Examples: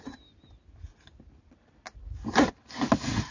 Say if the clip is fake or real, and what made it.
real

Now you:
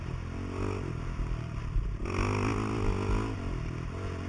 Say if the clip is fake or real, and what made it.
real